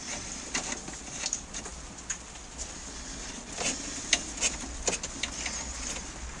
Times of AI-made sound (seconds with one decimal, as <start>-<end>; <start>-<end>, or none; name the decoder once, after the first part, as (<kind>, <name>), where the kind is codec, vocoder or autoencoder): none